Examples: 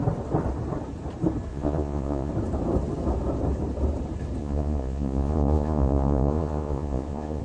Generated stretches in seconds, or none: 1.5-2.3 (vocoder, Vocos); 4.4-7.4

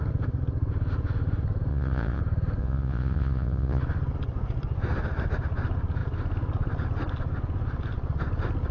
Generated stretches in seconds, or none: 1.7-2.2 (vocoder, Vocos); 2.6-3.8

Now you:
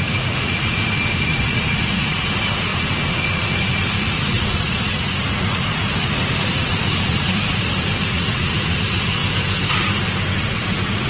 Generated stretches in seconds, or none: 0.0-9.2 (vocoder, Vocos); 10.3-11.1

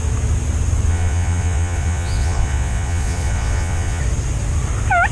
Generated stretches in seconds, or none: 0.9-4.0 (vocoder, Vocos)

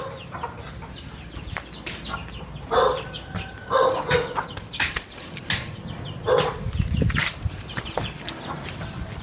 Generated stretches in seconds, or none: none

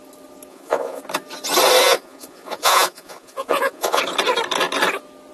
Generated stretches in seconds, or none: 0.5-1.0 (vocoder, Vocos); 1.8-4.0

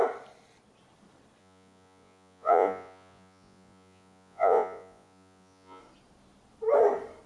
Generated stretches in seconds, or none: 1.4-5.8 (vocoder, Vocos)